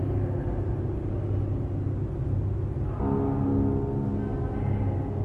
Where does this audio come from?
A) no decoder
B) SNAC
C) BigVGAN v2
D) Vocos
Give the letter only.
A